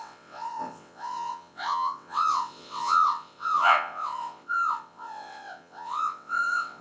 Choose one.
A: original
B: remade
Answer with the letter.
B